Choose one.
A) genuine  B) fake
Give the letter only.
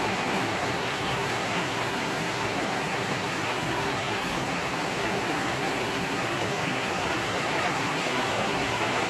B